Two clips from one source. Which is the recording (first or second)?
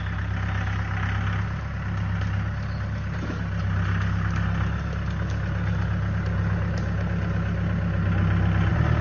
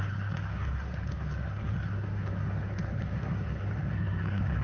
first